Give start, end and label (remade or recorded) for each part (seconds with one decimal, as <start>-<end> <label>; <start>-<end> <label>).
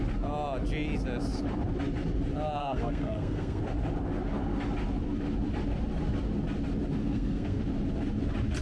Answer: 0.0-2.6 recorded; 2.6-3.6 remade; 3.6-7.0 recorded; 7.0-7.6 remade; 7.6-8.6 recorded